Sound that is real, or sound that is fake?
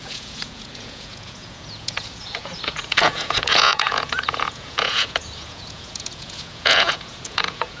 fake